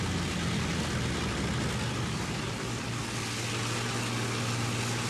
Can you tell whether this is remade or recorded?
recorded